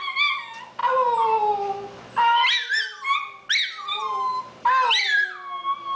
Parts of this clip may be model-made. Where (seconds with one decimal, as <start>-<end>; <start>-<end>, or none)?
none